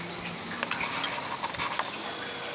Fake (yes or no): no